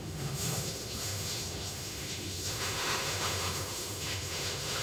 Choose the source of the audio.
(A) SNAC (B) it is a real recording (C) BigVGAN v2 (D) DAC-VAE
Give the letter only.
D